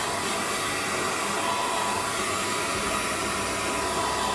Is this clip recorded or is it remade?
recorded